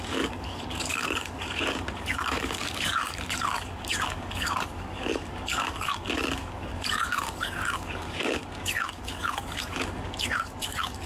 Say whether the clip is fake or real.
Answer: fake